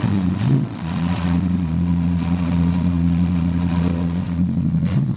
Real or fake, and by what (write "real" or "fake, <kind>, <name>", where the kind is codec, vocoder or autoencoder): fake, vocoder, Vocos